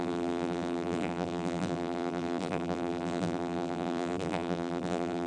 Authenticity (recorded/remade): remade